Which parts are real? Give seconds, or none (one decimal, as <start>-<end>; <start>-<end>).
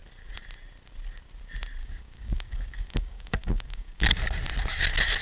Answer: 0.0-1.8; 4.1-5.2